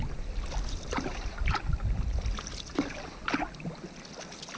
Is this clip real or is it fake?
real